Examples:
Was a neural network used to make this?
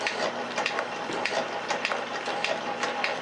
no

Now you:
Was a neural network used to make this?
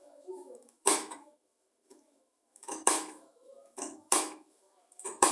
yes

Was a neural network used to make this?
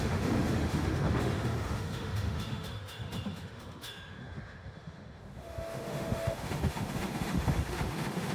yes